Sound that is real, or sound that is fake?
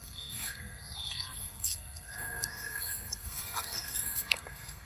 fake